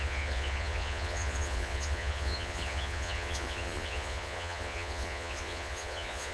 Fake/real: fake